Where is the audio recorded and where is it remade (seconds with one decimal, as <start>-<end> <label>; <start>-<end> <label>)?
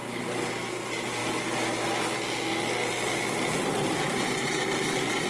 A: 0.0-5.3 recorded